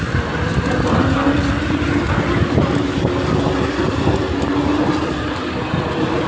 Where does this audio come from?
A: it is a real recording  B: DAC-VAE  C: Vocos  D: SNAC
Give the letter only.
A